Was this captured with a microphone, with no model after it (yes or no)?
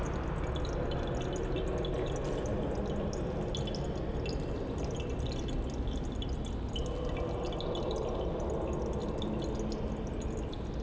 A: yes